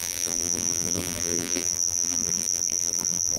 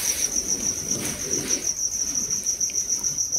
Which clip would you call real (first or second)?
second